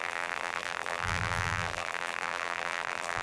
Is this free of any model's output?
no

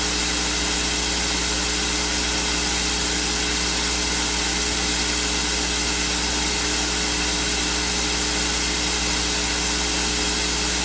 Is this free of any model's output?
yes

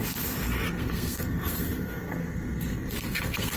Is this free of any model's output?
no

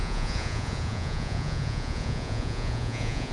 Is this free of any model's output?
no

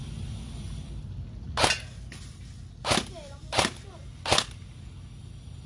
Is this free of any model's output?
yes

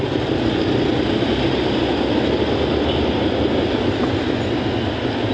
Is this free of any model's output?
yes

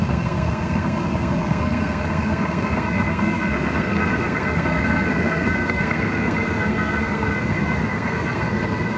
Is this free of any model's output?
no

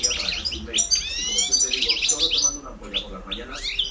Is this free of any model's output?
yes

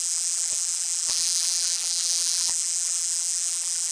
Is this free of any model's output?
no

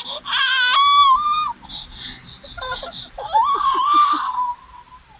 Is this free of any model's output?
yes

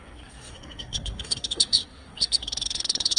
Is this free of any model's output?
no